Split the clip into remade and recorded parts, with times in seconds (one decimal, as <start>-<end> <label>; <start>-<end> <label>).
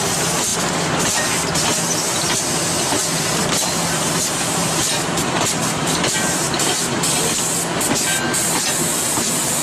0.0-4.6 recorded; 4.6-7.3 remade; 7.3-9.6 recorded